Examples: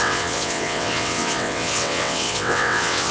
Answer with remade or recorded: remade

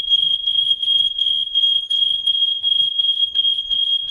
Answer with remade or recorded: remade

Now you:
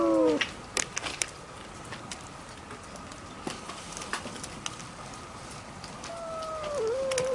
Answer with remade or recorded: recorded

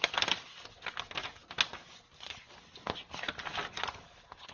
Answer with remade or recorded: recorded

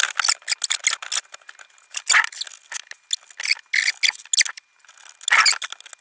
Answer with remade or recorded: recorded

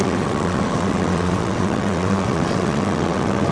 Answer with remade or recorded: remade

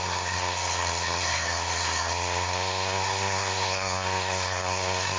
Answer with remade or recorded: remade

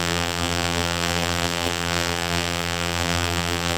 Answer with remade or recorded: remade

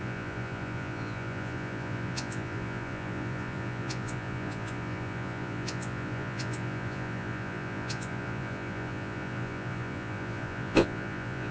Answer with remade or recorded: remade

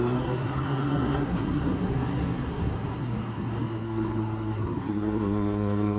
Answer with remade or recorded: remade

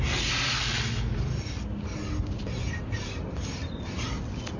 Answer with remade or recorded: recorded